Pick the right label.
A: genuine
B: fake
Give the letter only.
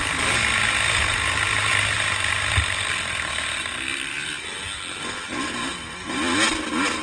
A